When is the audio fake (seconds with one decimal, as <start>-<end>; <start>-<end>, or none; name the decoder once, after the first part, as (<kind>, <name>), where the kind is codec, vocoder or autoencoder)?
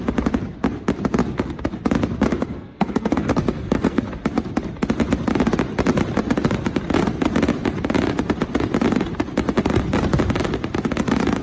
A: 2.3-4.0 (codec, SNAC)